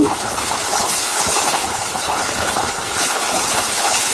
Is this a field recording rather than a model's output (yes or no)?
no